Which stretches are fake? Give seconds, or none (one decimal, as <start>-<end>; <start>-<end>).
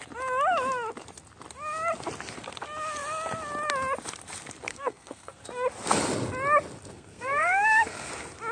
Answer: 4.7-5.4; 6.9-8.1